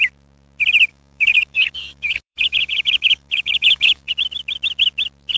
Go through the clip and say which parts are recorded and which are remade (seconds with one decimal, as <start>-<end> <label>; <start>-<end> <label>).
0.0-0.9 recorded; 0.9-4.1 remade; 4.1-5.4 recorded